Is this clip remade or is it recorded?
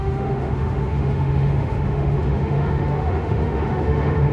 remade